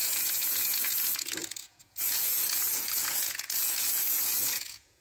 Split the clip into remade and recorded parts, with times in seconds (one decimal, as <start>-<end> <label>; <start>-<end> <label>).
0.0-5.0 remade